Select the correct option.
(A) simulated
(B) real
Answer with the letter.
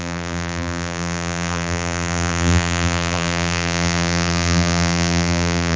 A